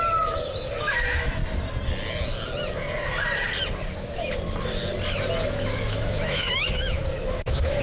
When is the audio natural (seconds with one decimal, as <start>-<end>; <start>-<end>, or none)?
1.4-5.4